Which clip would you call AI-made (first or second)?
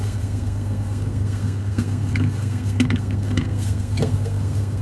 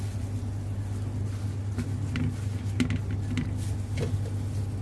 first